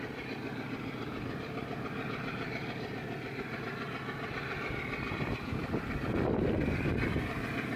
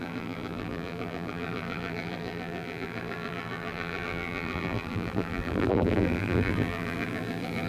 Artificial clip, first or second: second